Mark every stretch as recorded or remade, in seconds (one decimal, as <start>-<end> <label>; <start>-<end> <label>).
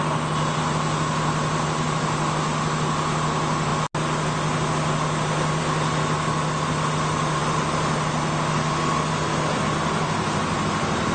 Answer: 0.0-11.1 recorded